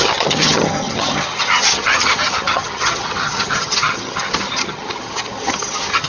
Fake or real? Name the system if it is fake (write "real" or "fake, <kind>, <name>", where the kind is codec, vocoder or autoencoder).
fake, vocoder, HiFi-GAN